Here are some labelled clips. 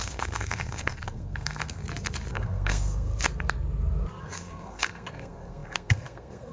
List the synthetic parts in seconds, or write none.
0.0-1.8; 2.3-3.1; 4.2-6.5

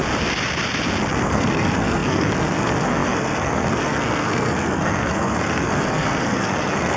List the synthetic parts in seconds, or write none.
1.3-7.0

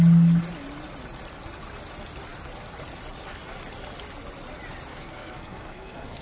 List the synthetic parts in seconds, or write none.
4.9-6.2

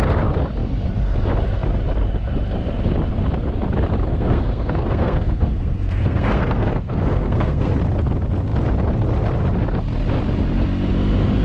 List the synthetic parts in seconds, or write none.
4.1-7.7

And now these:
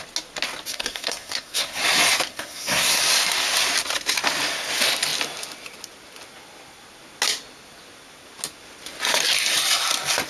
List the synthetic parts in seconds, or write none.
0.7-1.8; 2.3-3.0

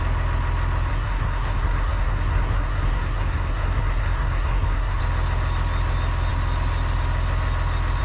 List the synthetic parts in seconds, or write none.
0.9-5.0

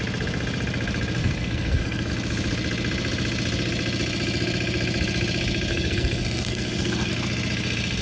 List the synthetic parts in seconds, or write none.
1.2-2.1; 5.7-7.1

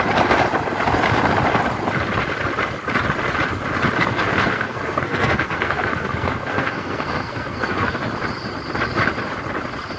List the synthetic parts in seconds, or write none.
4.0-8.0